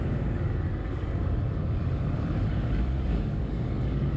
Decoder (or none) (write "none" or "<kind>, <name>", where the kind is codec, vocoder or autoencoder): codec, DAC